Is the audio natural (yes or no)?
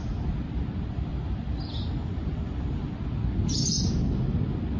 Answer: no